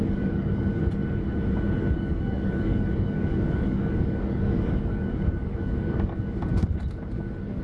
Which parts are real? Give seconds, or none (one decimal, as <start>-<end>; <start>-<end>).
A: 0.8-1.8